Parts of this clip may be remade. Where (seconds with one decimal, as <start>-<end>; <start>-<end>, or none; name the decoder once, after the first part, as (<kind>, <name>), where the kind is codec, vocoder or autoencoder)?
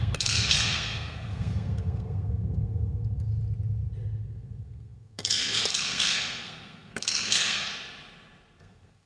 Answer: 0.0-3.3 (codec, SNAC); 4.2-7.7; 8.6-9.1